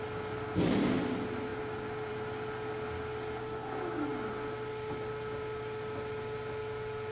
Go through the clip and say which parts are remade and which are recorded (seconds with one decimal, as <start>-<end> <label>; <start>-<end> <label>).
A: 0.0-7.1 recorded